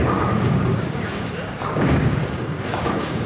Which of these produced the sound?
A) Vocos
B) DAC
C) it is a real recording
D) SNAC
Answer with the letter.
B